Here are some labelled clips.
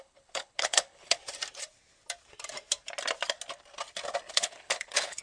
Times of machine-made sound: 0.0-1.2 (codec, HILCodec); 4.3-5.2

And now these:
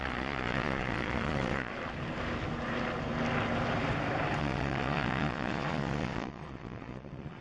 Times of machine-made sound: 0.0-1.7 (vocoder, Vocos); 4.4-7.4